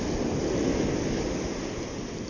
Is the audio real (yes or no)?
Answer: yes